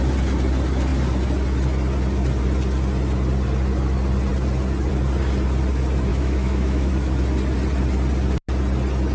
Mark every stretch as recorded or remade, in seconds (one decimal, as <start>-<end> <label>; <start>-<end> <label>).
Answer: 0.0-6.1 recorded; 6.1-6.9 remade; 6.9-9.1 recorded